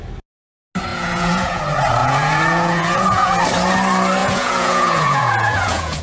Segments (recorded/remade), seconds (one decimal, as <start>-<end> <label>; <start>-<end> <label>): 0.0-0.9 recorded; 0.9-1.6 remade; 1.6-2.0 recorded; 2.0-3.4 remade; 3.4-4.2 recorded; 4.2-6.0 remade